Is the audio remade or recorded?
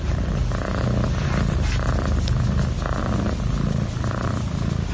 recorded